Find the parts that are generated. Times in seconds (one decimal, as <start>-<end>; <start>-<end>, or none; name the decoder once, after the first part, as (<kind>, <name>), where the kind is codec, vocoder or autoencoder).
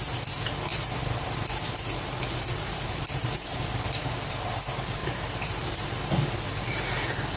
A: 0.7-1.6 (vocoder, BigVGAN v2); 2.5-4.2; 5.0-5.8